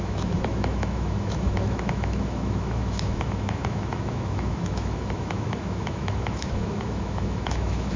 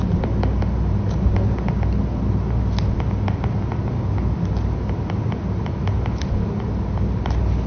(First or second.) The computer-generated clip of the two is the first